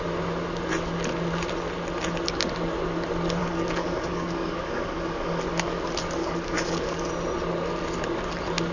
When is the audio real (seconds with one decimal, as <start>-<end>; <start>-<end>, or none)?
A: 0.0-3.4; 5.8-6.2; 7.1-8.7